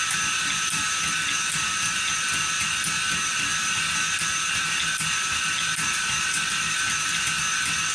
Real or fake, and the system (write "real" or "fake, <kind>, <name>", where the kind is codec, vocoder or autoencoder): real